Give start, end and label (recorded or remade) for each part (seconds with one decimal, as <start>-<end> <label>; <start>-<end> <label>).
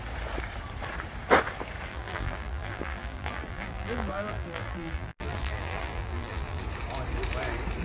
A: 0.0-1.9 recorded; 1.9-6.6 remade; 6.6-7.8 recorded